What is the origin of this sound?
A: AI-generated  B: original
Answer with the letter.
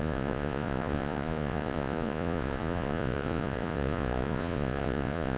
A